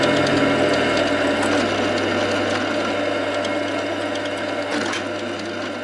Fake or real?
real